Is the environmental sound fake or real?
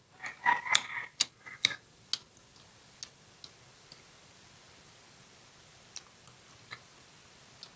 real